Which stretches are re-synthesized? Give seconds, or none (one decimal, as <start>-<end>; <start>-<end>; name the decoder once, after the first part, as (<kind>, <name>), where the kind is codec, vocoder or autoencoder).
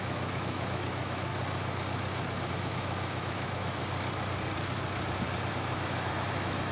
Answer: 0.0-1.3 (autoencoder, DAC-VAE); 2.5-3.8; 5.5-6.7